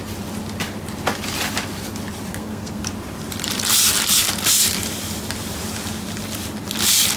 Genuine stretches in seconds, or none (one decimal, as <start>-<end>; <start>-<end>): 0.0-2.3; 2.9-7.2